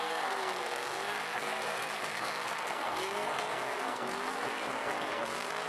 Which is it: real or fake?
fake